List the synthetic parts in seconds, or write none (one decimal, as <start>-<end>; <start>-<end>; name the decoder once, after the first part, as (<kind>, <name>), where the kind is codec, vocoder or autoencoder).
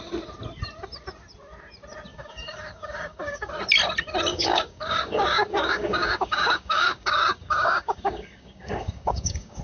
2.1-3.5 (codec, DAC); 4.3-9.6